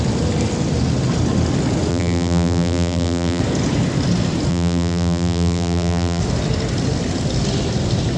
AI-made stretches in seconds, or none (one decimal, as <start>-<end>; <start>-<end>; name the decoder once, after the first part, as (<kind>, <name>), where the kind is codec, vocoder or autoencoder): 1.9-3.4 (vocoder, BigVGAN v2); 4.5-6.2